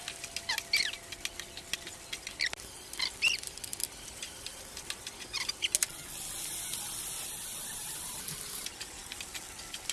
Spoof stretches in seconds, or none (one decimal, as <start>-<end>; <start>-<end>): none